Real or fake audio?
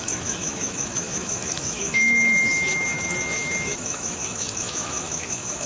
fake